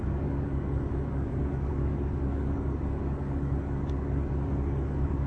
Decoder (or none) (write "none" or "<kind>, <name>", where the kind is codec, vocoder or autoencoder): codec, DAC